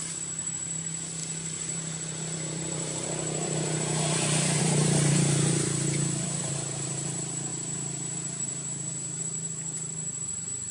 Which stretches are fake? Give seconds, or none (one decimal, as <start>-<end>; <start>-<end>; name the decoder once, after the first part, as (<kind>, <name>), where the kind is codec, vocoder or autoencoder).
0.0-10.7 (vocoder, BigVGAN v2)